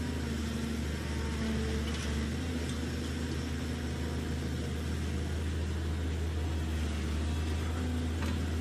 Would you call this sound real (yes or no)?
yes